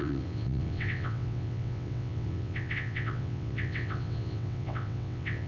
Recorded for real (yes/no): no